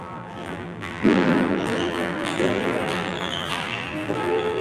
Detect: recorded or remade remade